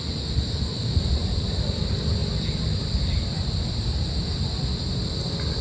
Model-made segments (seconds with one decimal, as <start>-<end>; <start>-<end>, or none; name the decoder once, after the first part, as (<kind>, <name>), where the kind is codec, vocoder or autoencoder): 0.0-2.2 (vocoder, BigVGAN v2)